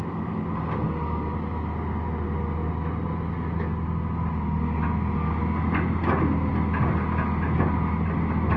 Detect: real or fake real